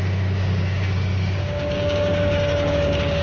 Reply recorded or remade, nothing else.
remade